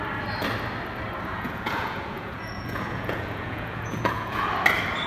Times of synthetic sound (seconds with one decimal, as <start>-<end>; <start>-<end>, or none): 1.3-4.4